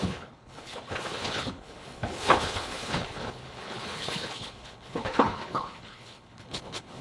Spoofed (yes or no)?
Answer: yes